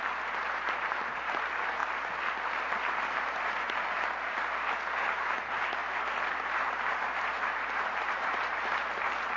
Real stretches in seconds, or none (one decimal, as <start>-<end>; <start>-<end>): 1.8-3.2; 5.8-6.9